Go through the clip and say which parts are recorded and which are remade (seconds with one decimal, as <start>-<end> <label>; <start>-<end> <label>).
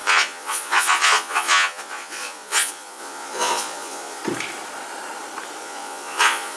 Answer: 0.0-4.2 remade; 4.2-5.6 recorded; 5.6-6.6 remade